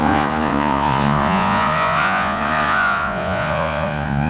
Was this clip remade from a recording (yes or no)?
yes